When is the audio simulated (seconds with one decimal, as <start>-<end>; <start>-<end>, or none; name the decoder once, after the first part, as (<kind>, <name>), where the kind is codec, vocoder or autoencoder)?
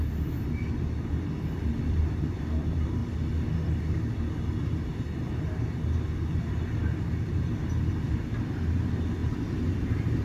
0.0-3.0 (vocoder, BigVGAN v2); 6.4-10.2